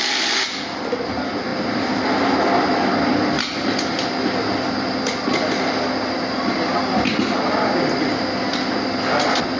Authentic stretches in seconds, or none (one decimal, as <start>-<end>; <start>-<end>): 0.0-9.6